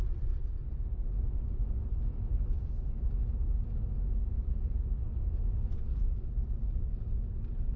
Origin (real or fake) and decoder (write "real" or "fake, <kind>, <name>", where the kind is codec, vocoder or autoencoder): real